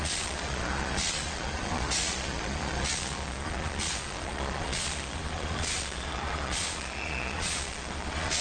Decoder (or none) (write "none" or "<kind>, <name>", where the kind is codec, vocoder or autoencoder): vocoder, Vocos